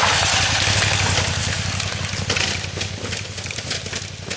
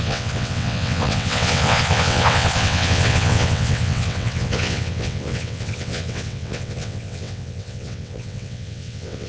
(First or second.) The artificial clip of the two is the second